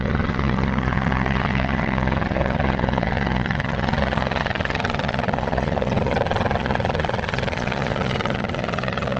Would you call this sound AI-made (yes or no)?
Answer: yes